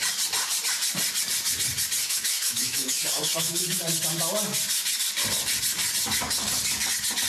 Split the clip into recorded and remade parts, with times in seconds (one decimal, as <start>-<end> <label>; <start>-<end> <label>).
0.0-2.0 recorded; 2.0-3.8 remade; 3.8-7.3 recorded